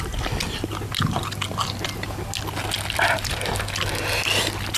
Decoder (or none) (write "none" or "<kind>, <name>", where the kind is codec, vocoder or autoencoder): none